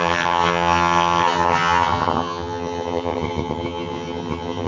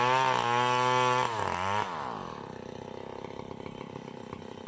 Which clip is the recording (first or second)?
second